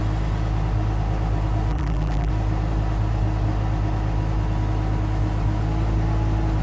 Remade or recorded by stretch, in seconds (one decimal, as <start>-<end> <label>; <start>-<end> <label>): 0.0-1.7 recorded; 1.7-2.3 remade; 2.3-6.6 recorded